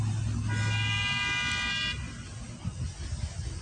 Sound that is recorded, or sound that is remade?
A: recorded